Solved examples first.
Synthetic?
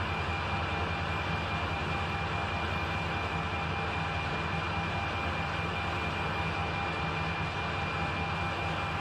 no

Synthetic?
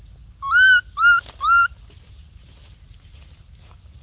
no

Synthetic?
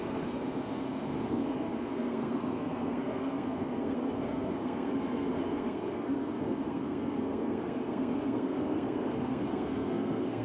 yes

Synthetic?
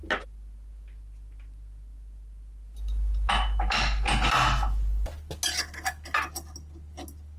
no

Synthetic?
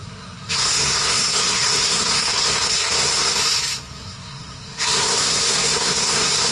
yes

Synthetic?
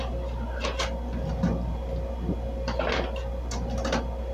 no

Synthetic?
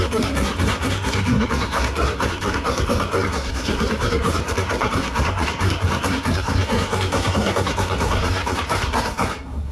yes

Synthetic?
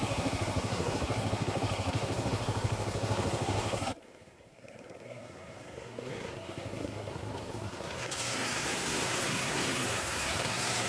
yes